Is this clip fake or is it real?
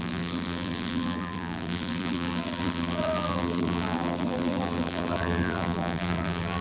fake